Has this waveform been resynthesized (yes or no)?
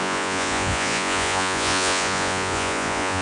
yes